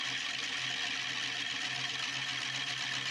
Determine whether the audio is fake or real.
real